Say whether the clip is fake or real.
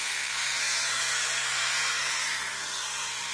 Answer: fake